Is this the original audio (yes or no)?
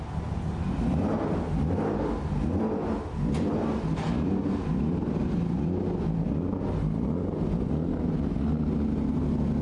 yes